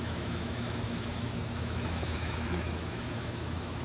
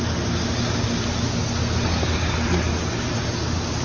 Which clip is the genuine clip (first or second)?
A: second